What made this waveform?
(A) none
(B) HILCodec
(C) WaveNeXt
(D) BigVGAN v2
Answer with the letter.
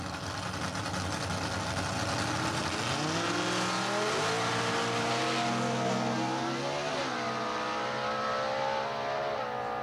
A